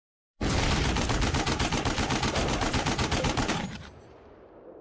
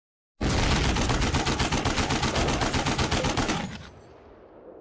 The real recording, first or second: second